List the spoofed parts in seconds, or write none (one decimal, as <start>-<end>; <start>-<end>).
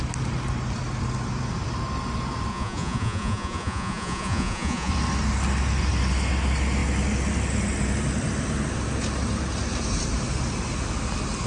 2.5-4.9